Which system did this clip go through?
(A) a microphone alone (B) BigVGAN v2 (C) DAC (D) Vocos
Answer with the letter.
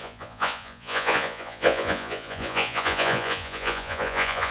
D